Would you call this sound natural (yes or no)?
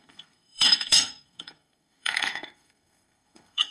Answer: no